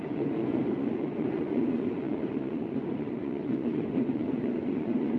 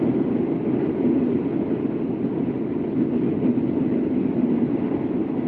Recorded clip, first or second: second